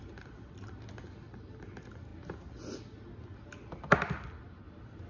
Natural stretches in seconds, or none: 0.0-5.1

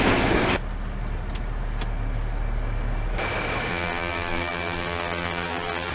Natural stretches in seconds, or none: 0.0-3.7